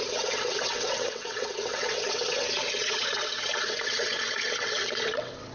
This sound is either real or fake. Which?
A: fake